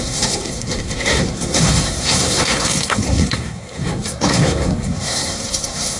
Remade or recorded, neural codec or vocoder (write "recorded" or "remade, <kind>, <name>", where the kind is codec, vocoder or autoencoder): remade, codec, SNAC